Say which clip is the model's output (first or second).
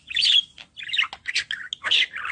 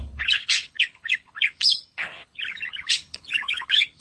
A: second